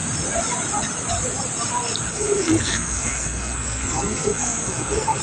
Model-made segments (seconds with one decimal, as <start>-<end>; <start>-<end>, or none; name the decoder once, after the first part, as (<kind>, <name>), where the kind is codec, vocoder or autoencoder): 2.1-5.2 (codec, SNAC)